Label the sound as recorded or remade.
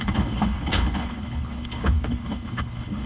remade